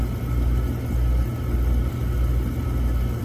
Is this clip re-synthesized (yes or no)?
no